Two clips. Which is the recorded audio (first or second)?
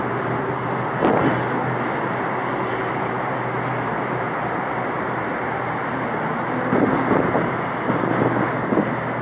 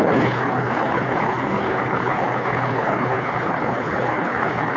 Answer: first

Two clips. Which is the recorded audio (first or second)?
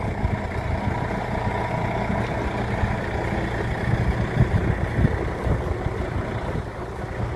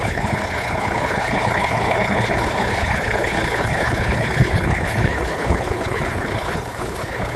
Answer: first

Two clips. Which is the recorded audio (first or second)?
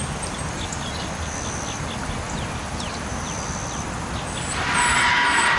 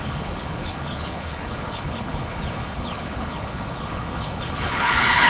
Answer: first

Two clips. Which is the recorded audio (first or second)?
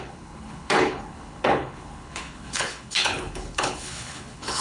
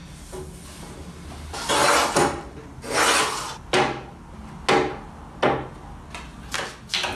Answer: second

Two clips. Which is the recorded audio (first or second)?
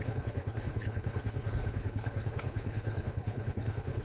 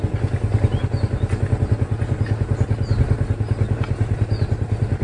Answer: second